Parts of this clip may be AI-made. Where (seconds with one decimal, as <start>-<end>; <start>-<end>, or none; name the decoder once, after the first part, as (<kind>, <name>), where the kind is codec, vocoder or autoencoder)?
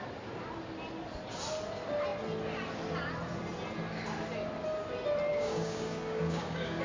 5.3-6.8 (codec, DAC)